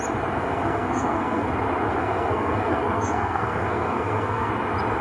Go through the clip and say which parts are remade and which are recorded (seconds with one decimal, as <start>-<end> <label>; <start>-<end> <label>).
0.0-0.4 recorded; 0.4-1.5 remade; 1.5-1.9 recorded; 1.9-4.5 remade; 4.5-5.0 recorded